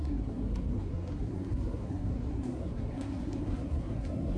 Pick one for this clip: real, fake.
fake